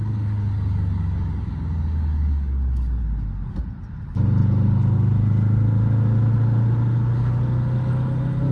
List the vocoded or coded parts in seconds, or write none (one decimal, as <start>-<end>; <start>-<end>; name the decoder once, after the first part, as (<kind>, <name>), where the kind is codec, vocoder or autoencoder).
0.0-3.0 (codec, DAC)